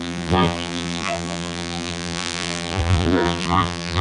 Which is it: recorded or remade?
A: remade